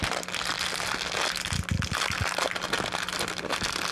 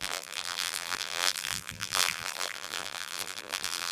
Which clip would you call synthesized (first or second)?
second